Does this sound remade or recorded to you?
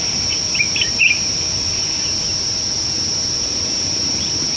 recorded